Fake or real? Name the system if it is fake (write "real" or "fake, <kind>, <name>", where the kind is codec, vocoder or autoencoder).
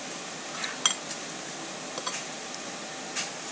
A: real